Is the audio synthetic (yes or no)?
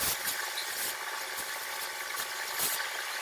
no